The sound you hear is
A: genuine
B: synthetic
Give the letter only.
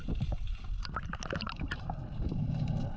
A